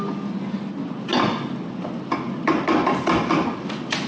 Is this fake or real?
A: real